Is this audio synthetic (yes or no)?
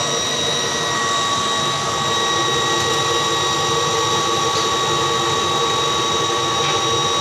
no